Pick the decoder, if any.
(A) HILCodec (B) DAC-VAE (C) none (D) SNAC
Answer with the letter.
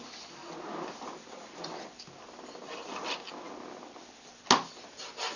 C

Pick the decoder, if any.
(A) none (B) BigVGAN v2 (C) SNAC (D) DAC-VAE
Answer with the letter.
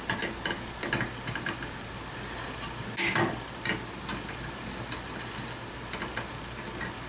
A